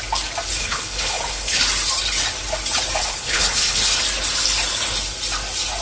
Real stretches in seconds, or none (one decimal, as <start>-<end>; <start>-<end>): 0.0-0.6; 1.6-3.0; 4.0-5.8